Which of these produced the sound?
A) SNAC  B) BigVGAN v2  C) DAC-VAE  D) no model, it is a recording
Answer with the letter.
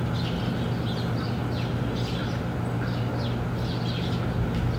D